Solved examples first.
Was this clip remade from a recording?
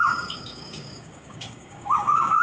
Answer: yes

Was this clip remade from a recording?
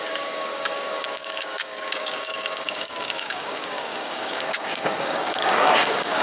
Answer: yes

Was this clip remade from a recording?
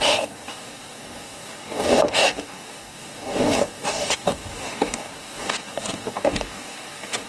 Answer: yes